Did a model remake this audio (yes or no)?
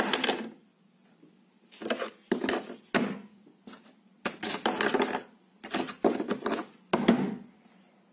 no